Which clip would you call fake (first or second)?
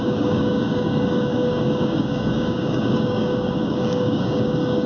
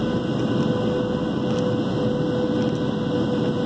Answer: first